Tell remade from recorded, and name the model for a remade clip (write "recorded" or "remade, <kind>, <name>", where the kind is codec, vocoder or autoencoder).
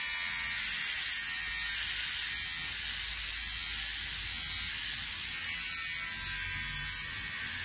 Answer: recorded